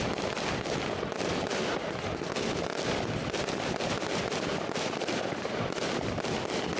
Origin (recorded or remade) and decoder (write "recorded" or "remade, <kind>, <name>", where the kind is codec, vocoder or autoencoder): recorded